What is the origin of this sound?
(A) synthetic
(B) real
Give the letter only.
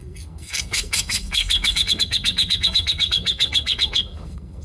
A